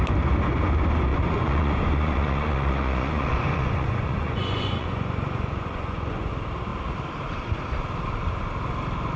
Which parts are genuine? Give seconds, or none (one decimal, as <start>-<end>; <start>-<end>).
0.0-1.1; 6.3-9.2